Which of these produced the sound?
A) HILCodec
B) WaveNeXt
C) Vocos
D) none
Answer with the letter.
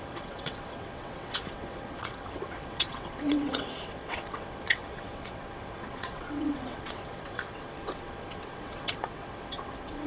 B